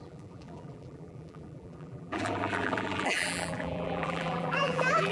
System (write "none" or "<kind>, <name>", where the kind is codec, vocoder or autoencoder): vocoder, BigVGAN v2